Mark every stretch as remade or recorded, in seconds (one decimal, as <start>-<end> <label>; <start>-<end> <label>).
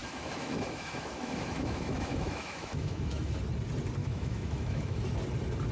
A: 0.0-3.4 remade; 3.4-4.0 recorded; 4.0-5.0 remade; 5.0-5.7 recorded